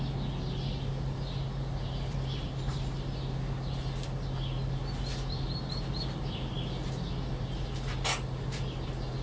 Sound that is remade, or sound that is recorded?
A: recorded